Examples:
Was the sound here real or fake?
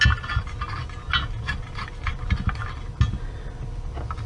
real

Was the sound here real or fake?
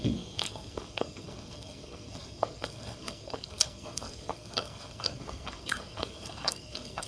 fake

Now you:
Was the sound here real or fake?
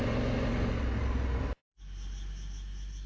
real